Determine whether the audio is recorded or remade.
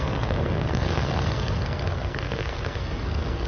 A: remade